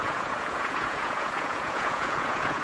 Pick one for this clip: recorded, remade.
remade